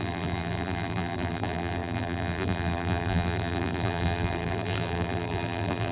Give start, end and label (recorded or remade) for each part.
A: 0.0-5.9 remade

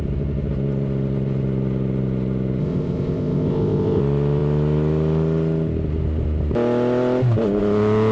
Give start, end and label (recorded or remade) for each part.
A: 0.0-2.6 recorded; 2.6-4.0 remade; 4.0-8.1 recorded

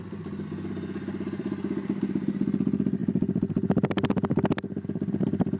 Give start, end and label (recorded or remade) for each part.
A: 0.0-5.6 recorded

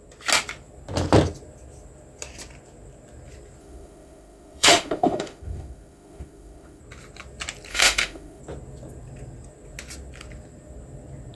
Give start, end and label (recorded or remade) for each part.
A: 0.0-3.6 recorded; 3.6-6.8 remade; 6.8-7.7 recorded; 7.7-8.4 remade; 8.4-11.4 recorded